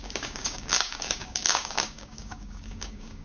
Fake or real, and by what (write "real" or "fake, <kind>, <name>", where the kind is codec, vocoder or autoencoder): fake, codec, DAC